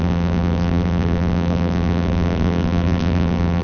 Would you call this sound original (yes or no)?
no